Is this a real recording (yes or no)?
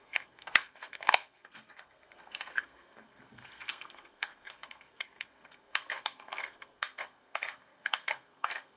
no